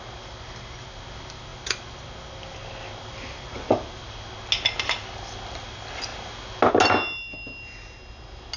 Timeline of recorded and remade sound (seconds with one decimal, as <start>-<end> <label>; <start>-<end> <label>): 0.0-8.6 recorded